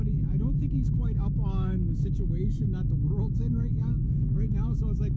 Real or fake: fake